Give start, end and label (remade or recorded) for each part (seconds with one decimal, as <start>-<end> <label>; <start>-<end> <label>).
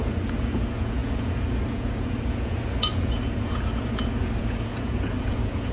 0.0-5.7 remade